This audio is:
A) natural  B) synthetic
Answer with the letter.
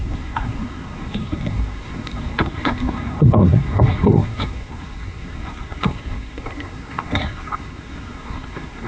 B